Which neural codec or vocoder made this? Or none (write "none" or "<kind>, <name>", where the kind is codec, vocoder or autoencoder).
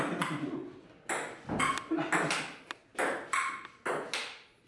none